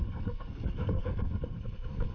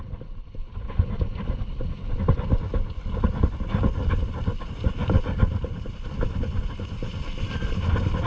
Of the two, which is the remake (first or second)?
first